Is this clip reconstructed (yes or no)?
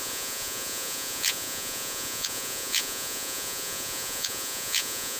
yes